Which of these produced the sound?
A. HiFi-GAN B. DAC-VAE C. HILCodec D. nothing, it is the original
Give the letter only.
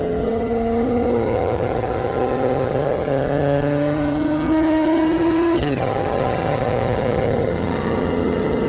A